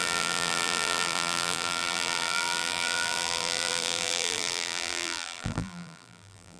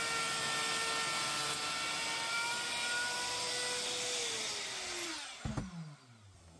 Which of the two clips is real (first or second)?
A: second